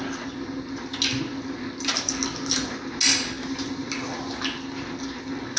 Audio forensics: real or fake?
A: real